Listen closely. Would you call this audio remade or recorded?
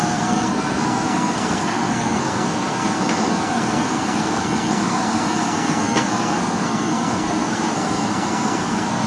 remade